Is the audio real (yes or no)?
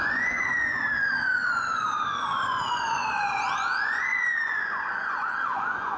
no